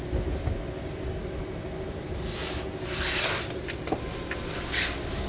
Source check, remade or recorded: recorded